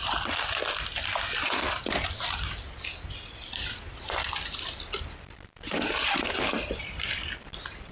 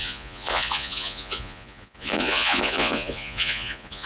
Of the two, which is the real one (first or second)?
first